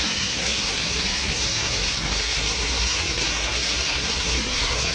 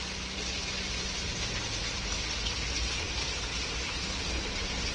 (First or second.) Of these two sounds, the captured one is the second